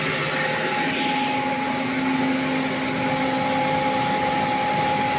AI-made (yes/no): no